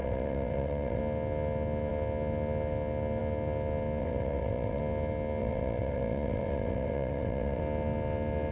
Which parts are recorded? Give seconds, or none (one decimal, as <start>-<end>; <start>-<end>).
1.0-4.0; 4.8-5.4; 7.6-8.5